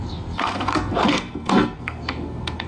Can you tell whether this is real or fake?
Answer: fake